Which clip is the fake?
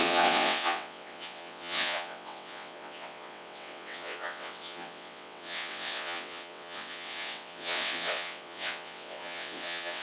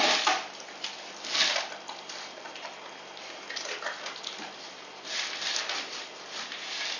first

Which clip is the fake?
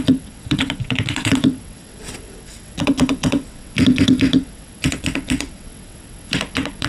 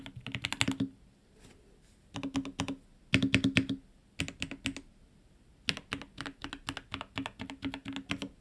first